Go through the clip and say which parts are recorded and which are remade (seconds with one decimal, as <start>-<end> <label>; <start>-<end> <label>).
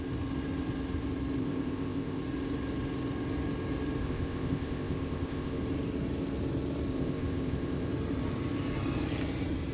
0.0-1.4 recorded; 1.4-2.2 remade; 2.2-4.0 recorded; 4.0-5.6 remade; 5.6-6.9 recorded; 6.9-7.9 remade; 7.9-9.7 recorded